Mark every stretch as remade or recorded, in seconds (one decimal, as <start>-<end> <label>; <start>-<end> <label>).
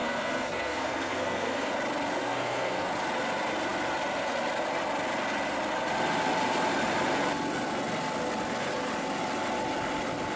0.0-1.7 remade; 1.7-2.2 recorded; 2.2-2.9 remade; 2.9-10.4 recorded